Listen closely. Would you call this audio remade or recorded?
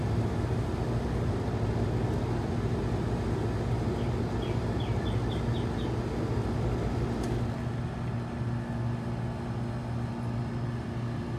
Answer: recorded